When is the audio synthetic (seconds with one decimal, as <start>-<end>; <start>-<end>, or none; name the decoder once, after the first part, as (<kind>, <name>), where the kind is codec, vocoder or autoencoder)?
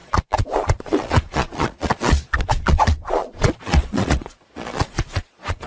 0.0-5.7 (vocoder, Vocos)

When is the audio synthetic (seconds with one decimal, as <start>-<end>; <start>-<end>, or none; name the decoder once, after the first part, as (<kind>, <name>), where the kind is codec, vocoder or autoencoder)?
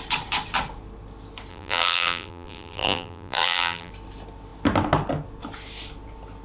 1.5-3.9 (vocoder, BigVGAN v2)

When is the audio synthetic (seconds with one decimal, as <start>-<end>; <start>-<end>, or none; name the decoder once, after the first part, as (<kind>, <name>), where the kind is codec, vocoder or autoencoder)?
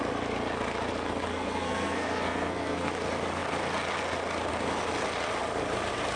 1.3-2.9 (codec, SNAC)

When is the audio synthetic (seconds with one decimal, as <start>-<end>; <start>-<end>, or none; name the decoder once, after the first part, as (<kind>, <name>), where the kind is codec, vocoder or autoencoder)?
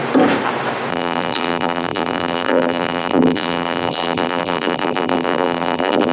0.9-6.1 (vocoder, BigVGAN v2)